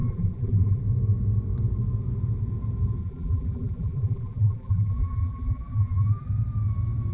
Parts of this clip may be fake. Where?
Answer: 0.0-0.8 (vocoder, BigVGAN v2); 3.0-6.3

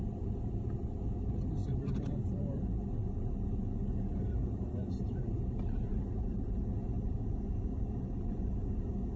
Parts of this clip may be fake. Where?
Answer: 1.6-2.6 (vocoder, BigVGAN v2); 4.1-6.6